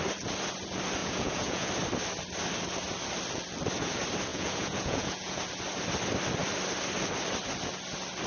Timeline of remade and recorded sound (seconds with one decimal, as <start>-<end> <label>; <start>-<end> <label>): 0.0-1.0 recorded; 1.0-1.7 remade; 1.7-4.3 recorded; 4.3-5.4 remade; 5.4-8.3 recorded